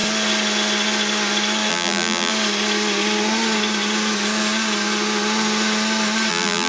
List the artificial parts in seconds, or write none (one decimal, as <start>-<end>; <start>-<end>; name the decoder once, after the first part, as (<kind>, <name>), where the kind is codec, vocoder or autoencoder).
1.7-2.3 (vocoder, BigVGAN v2); 6.3-6.7